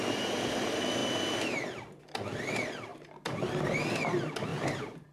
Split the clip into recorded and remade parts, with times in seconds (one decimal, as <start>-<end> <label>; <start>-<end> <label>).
0.0-2.9 recorded; 2.9-3.8 remade; 3.8-4.5 recorded; 4.5-5.1 remade